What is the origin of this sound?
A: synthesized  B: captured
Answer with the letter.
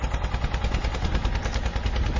B